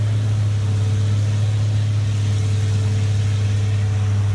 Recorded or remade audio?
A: recorded